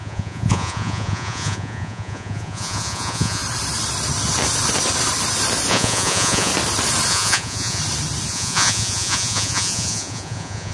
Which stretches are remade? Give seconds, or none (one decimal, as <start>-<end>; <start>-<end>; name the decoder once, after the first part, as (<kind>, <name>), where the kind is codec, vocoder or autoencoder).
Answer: 0.0-3.4 (vocoder, Vocos); 5.7-6.5; 7.1-7.8; 8.3-10.7